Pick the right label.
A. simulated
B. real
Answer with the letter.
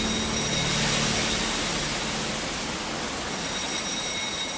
B